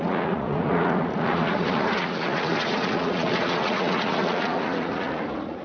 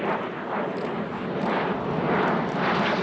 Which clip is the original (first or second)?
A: second